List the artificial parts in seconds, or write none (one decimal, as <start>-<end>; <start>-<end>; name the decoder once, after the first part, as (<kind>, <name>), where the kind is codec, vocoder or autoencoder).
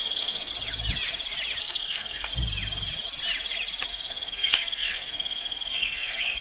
0.0-0.5 (codec, SNAC); 1.6-2.3; 3.9-6.4